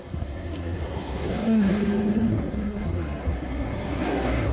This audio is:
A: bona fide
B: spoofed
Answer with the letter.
B